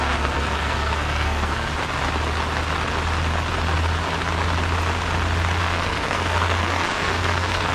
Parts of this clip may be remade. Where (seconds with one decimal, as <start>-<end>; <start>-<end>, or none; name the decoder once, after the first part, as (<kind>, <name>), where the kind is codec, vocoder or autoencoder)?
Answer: 0.0-1.7 (codec, SNAC); 5.6-7.7